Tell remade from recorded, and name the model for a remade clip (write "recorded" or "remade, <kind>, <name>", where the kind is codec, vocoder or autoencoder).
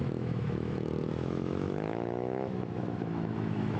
remade, autoencoder, DAC-VAE